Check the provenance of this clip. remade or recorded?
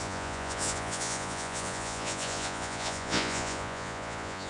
remade